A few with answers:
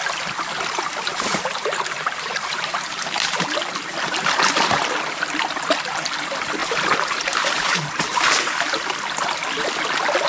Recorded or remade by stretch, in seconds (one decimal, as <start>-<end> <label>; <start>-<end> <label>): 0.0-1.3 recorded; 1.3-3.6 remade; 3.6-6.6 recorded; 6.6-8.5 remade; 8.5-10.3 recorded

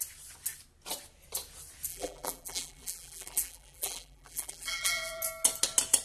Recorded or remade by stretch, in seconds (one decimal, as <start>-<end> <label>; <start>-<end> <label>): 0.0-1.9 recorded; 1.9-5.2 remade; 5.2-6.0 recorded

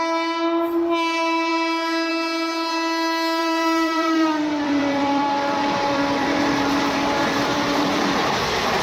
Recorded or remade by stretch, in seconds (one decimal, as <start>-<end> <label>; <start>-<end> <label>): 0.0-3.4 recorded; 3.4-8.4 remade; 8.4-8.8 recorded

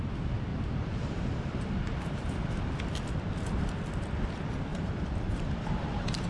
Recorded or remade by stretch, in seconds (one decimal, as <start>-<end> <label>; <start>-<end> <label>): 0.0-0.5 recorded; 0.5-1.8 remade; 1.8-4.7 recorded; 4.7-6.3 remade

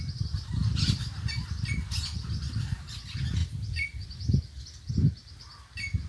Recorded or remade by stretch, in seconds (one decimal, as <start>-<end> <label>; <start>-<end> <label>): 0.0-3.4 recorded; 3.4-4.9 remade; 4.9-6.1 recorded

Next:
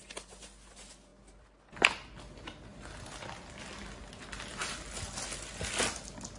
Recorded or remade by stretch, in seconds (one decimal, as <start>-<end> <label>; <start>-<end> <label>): 0.0-6.4 recorded

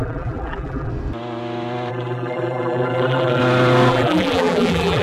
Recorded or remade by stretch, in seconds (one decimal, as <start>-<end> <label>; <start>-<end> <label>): 0.0-0.9 remade; 0.9-1.9 recorded; 1.9-3.4 remade; 3.4-3.9 recorded; 3.9-5.0 remade